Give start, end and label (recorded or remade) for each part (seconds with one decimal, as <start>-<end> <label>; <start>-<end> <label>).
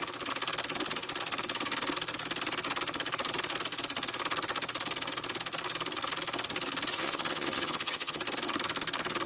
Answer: 0.0-6.9 recorded; 6.9-8.2 remade; 8.2-9.3 recorded